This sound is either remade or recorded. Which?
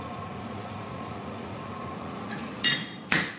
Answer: remade